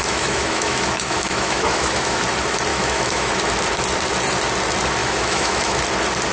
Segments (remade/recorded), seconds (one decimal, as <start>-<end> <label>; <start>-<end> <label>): 0.0-2.2 remade; 2.2-2.7 recorded; 2.7-3.3 remade; 3.3-5.0 recorded; 5.0-5.8 remade; 5.8-6.3 recorded